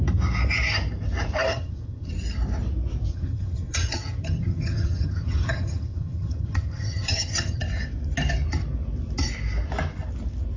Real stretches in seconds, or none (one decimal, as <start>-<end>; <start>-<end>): 0.0-1.5; 2.1-3.1; 7.6-10.6